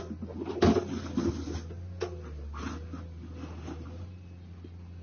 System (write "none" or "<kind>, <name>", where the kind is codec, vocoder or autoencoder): none